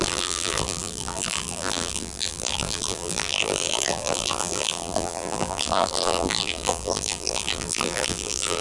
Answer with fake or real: fake